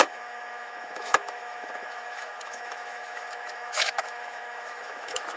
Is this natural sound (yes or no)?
no